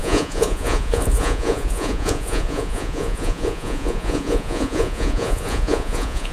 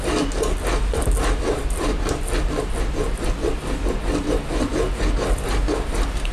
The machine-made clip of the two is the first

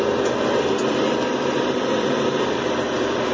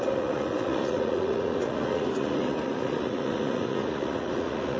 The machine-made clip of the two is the second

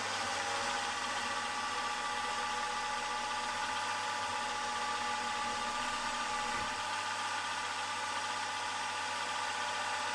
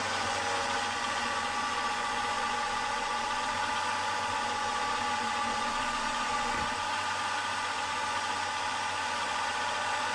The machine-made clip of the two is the second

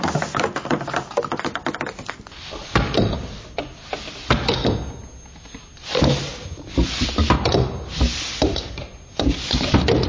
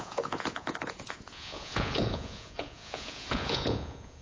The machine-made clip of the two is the second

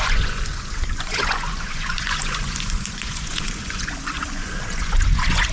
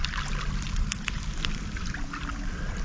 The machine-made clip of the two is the first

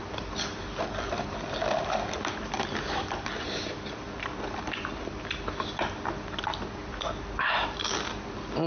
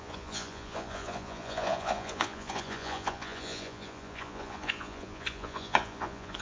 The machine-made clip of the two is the second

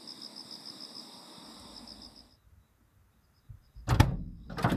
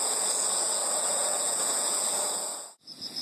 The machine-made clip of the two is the second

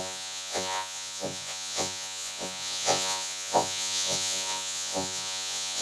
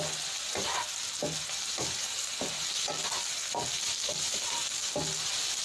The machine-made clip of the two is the first